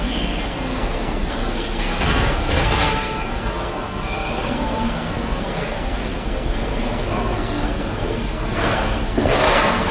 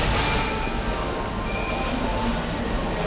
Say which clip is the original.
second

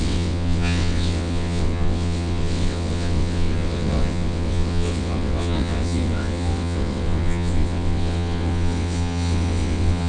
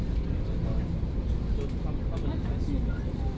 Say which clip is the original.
second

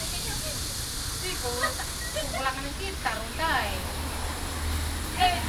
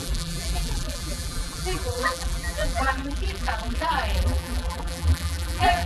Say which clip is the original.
first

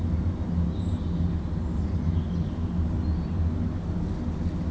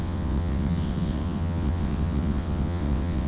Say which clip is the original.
first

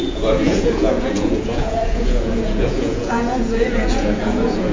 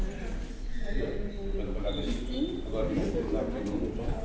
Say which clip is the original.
second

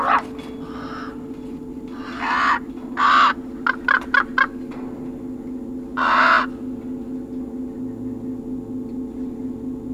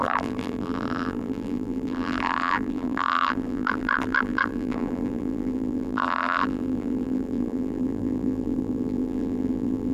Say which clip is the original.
first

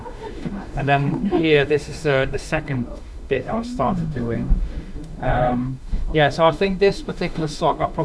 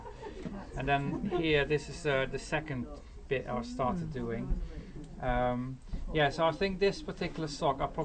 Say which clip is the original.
second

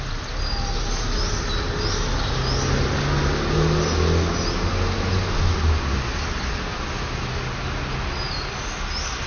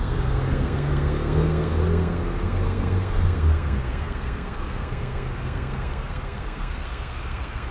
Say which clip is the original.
first